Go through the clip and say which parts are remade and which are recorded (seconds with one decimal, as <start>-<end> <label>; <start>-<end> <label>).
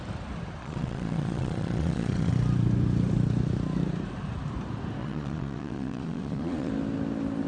0.0-0.6 recorded; 0.6-2.3 remade; 2.3-5.0 recorded; 5.0-6.7 remade; 6.7-7.5 recorded